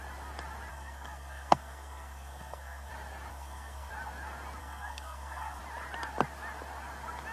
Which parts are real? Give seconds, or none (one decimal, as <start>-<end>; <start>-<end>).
0.0-0.7; 2.9-3.3; 3.9-4.6; 5.6-7.3